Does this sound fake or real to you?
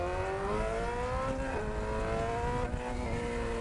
real